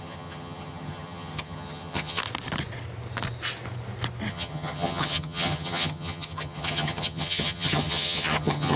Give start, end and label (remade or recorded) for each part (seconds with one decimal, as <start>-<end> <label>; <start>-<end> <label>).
0.0-2.2 remade; 2.2-4.3 recorded; 4.3-8.8 remade